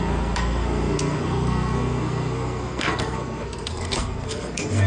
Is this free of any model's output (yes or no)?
no